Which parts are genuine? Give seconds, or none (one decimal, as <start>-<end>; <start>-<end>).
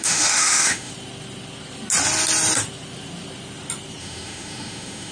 0.9-4.0